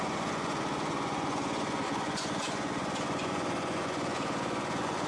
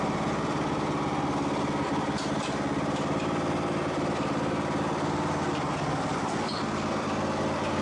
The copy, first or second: first